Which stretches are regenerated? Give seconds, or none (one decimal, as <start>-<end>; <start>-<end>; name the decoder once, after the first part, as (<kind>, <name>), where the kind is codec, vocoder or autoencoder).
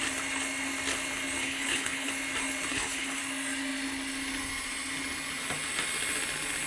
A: 1.4-2.1 (codec, HILCodec); 2.7-3.2